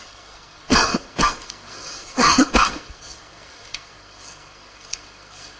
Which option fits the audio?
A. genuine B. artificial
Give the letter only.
B